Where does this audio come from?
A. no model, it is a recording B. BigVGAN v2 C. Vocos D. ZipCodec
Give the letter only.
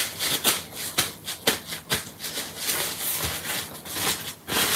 A